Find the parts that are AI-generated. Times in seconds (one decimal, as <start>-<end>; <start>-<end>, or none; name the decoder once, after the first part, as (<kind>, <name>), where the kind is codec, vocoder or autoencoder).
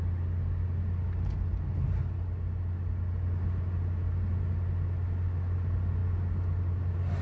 none